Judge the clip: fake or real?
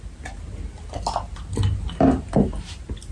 real